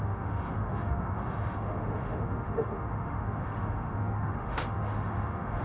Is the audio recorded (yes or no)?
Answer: no